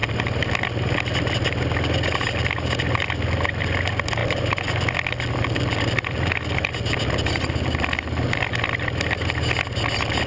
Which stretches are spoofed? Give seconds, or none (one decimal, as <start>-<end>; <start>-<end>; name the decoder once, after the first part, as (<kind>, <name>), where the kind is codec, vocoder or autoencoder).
none